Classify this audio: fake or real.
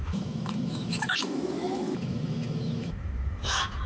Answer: fake